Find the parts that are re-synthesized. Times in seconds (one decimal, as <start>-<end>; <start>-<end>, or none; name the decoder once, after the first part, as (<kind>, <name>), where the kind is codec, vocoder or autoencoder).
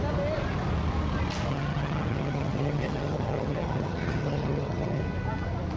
1.5-5.0 (vocoder, HiFi-GAN)